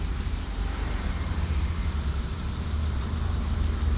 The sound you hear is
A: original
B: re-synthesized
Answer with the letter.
B